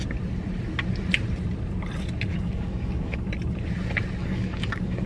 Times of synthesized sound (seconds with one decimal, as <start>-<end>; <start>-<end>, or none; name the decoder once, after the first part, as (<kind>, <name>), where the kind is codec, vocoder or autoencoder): 2.3-3.3 (codec, DAC); 4.2-5.1